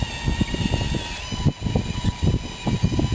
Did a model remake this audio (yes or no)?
no